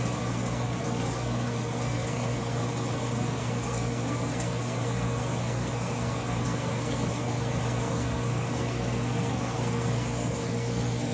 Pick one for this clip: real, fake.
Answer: fake